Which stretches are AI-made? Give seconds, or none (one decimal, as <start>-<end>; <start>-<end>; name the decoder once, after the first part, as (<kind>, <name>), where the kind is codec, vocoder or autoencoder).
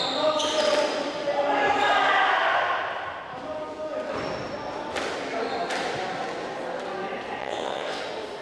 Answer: 7.4-8.0 (vocoder, WaveNeXt)